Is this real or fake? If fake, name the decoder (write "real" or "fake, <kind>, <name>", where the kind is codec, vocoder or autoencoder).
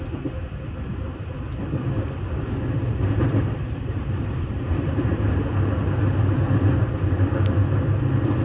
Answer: fake, vocoder, BigVGAN v2